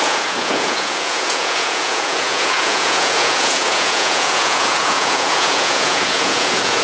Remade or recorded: remade